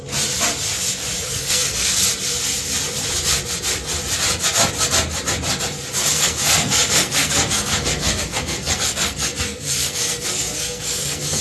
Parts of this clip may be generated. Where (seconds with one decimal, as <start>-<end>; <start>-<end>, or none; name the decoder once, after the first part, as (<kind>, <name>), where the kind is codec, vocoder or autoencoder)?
1.2-2.0 (codec, SNAC); 6.1-11.4